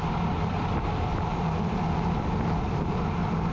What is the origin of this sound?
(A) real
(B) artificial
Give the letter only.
A